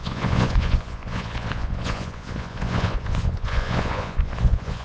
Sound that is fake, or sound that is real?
fake